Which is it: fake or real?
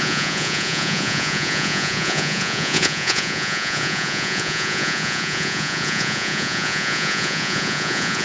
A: fake